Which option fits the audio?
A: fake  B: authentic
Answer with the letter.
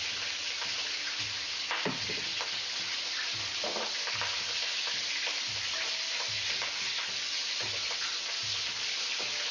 B